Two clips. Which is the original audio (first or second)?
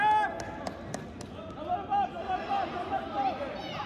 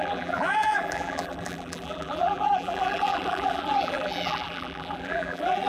first